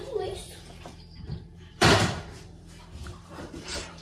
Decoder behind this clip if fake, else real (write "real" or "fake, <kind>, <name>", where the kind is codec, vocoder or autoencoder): fake, vocoder, BigVGAN v2